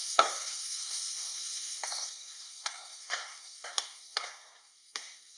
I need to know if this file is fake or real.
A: fake